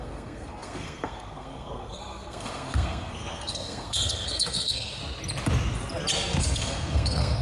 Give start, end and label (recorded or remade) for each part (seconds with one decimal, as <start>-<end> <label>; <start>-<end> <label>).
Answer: 0.0-5.0 remade; 5.0-6.4 recorded; 6.4-7.4 remade